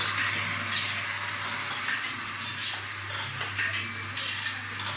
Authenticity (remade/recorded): recorded